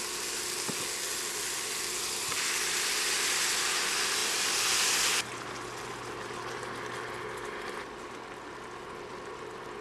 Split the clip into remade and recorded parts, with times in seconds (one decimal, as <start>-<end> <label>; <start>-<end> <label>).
0.0-9.8 recorded